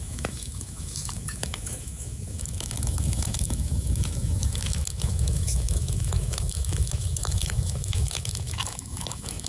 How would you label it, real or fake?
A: fake